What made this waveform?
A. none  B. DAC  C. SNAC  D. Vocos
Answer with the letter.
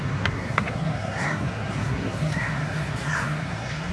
C